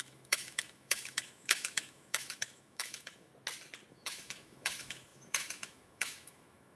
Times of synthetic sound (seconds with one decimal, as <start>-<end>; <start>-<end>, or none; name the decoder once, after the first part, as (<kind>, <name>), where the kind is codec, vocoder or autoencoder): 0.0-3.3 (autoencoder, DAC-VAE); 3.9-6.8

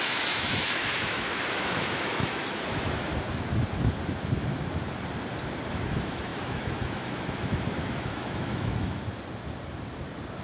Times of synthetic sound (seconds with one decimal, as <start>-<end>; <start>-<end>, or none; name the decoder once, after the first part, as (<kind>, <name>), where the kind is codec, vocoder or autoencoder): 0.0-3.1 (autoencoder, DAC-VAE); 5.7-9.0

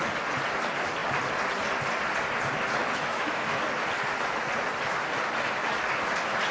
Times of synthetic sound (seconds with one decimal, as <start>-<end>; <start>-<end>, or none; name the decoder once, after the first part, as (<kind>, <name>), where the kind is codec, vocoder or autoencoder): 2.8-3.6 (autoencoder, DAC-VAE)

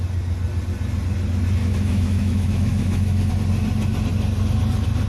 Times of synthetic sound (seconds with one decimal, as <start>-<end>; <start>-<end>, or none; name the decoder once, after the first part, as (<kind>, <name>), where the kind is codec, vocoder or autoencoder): 1.6-3.3 (autoencoder, DAC-VAE)

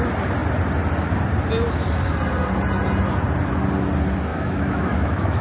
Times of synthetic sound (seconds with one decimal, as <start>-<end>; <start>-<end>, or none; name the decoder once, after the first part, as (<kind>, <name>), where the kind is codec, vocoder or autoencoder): 4.3-5.4 (autoencoder, DAC-VAE)